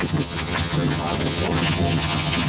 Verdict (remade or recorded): remade